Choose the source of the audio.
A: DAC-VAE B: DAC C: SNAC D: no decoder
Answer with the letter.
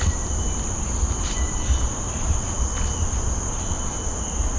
D